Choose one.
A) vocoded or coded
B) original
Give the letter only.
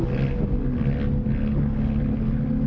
B